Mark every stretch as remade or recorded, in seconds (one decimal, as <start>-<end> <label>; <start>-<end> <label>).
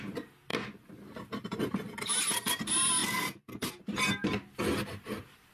0.0-3.0 recorded; 3.0-4.6 remade; 4.6-5.5 recorded